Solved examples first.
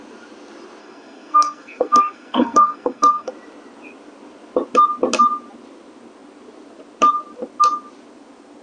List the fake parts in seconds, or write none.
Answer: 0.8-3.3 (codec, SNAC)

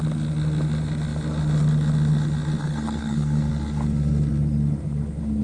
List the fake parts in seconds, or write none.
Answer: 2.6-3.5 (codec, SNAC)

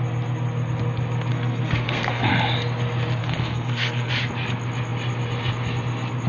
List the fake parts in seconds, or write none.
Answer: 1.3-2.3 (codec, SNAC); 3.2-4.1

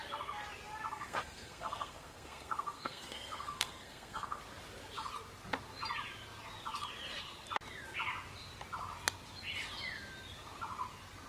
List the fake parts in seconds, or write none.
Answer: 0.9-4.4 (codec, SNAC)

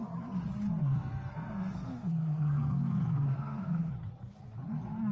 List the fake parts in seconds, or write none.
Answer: 0.8-3.9 (codec, SNAC)

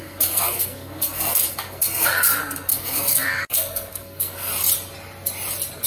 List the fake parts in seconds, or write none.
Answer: 0.0-4.5 (codec, SNAC)